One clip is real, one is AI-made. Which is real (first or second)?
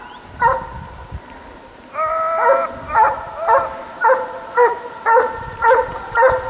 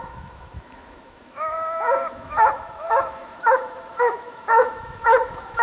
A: first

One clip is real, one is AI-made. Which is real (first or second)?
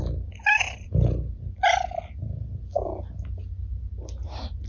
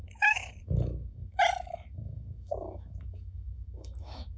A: first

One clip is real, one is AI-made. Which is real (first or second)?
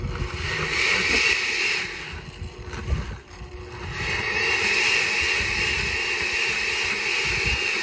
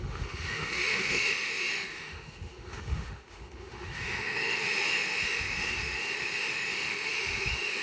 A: first